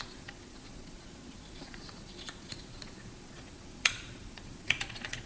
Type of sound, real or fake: fake